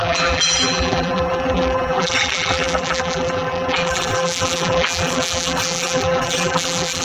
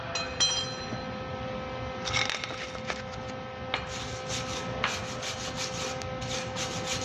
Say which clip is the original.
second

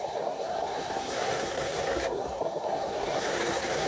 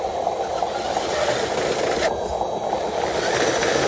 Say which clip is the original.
second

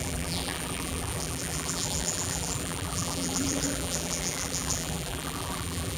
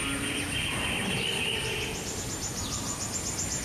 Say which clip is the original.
second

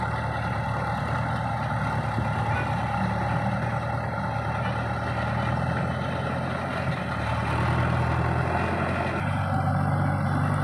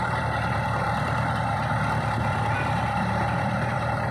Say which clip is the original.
first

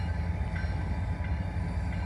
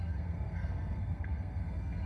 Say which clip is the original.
first